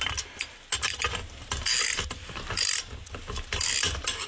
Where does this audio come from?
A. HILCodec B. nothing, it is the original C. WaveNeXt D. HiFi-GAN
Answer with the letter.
B